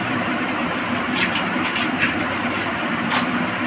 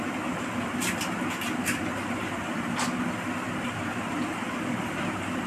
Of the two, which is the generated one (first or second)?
first